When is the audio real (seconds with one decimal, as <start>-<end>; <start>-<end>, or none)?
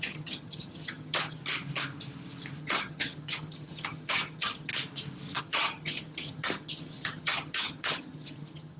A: 1.4-2.6; 4.7-5.4